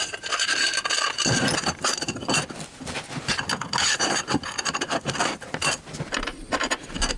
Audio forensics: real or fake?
real